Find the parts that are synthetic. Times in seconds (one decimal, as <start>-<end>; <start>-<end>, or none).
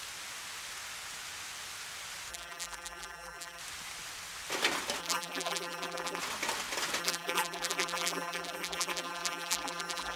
2.3-3.6; 5.0-6.2; 7.0-10.2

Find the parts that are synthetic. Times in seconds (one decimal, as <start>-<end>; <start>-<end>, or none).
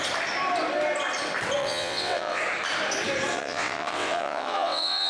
1.6-2.4; 3.3-5.1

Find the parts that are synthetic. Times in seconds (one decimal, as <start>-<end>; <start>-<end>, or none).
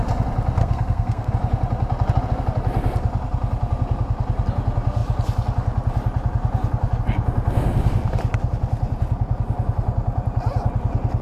0.6-1.3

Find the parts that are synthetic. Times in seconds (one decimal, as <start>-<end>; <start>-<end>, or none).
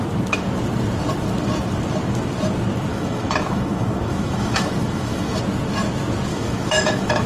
2.9-5.4; 6.3-7.3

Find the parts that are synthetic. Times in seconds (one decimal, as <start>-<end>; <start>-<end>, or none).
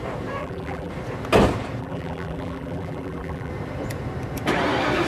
0.4-0.9; 1.8-3.5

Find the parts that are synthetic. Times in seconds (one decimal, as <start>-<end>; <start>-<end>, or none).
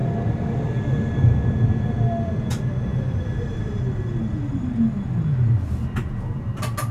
2.9-3.8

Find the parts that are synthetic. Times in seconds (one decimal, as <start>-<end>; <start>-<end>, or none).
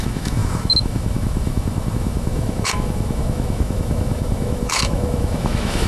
0.0-5.9